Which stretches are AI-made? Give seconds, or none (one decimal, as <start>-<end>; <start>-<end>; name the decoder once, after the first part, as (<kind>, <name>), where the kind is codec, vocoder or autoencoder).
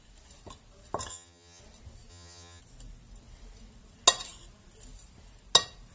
1.1-1.6 (vocoder, HiFi-GAN); 2.1-2.6